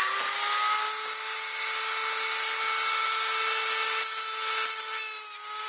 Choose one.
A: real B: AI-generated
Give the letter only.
A